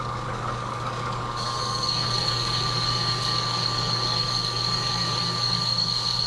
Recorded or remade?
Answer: remade